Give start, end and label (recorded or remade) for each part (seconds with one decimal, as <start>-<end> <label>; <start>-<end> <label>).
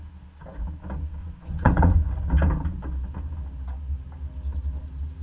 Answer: 0.0-1.2 recorded; 1.2-2.3 remade; 2.3-5.2 recorded